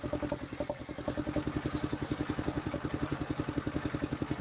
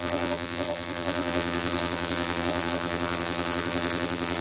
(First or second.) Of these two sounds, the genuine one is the first